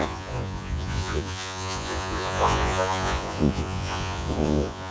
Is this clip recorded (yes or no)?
no